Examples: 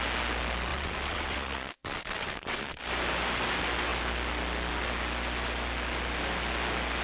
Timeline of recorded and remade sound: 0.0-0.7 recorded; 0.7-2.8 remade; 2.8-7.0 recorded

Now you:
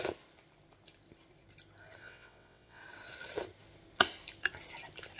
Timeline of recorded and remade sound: 0.0-2.0 recorded; 2.0-2.8 remade; 2.8-5.2 recorded

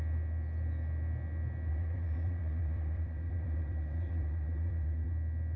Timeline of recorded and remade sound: 0.0-1.7 recorded; 1.7-5.1 remade; 5.1-5.6 recorded

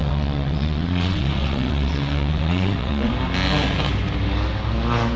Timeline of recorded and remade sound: 0.0-3.1 remade; 3.1-5.2 recorded